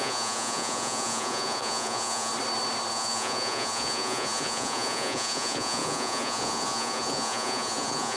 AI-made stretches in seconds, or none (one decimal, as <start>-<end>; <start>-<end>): 0.0-2.3; 2.9-8.2